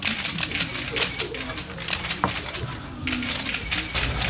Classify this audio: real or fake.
real